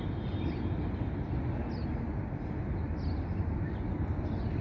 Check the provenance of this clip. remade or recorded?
recorded